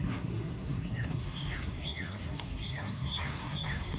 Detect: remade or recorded remade